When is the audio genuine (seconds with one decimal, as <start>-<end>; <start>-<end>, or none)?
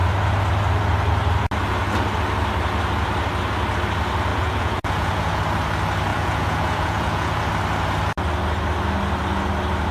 0.0-4.3; 5.4-6.1; 7.4-9.9